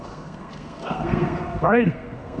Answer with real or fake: fake